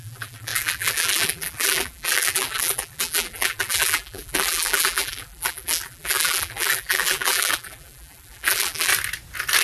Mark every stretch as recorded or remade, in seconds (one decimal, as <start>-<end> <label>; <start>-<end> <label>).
0.0-8.9 remade; 8.9-9.6 recorded